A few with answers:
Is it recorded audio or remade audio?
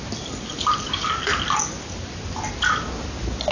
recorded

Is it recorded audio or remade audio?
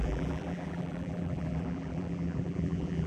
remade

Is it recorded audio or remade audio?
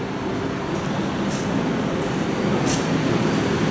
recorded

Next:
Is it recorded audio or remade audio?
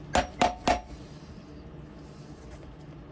recorded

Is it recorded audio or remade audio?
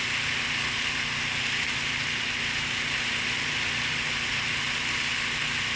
recorded